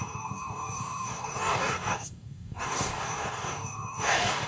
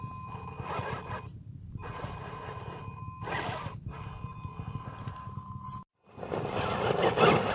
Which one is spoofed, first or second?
first